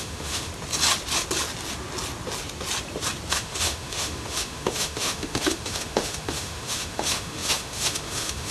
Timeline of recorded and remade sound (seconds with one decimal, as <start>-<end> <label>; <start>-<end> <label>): 0.0-0.5 remade; 0.5-3.3 recorded; 3.3-8.5 remade